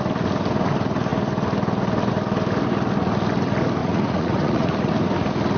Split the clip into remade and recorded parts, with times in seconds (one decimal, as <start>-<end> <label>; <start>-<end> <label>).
0.0-3.8 recorded; 3.8-4.9 remade; 4.9-5.6 recorded